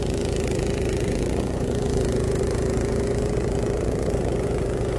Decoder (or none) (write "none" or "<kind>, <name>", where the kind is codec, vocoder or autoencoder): vocoder, Vocos